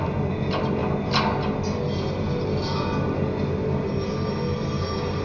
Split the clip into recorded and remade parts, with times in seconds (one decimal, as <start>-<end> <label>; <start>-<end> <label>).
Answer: 0.0-5.2 recorded

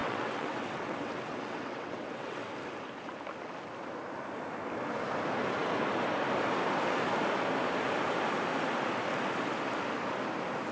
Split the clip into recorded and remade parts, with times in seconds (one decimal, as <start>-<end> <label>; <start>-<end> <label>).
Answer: 0.0-2.5 remade; 2.5-10.7 recorded

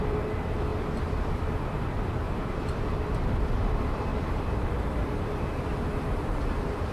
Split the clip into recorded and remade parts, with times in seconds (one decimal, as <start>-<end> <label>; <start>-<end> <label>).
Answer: 0.0-4.1 remade; 4.1-6.9 recorded

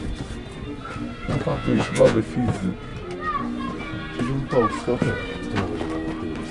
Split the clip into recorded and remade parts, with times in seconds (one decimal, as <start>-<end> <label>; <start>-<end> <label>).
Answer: 0.0-1.5 recorded; 1.5-2.2 remade; 2.2-6.5 recorded

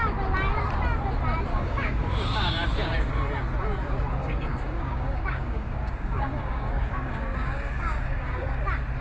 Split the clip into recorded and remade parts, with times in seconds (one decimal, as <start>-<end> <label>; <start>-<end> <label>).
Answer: 0.0-1.5 recorded; 1.5-3.1 remade; 3.1-4.2 recorded; 4.2-8.6 remade; 8.6-9.0 recorded

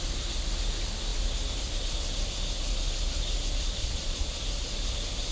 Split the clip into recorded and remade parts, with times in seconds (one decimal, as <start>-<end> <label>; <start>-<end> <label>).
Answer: 0.0-3.8 recorded; 3.8-4.4 remade; 4.4-5.3 recorded

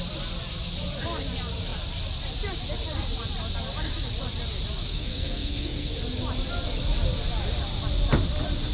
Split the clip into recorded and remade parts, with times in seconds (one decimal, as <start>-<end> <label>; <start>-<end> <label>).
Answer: 0.0-4.9 recorded; 4.9-5.9 remade; 5.9-8.7 recorded